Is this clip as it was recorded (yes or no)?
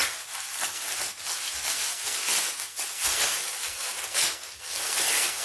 no